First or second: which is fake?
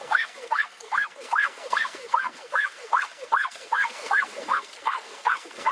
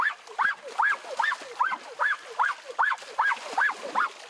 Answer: first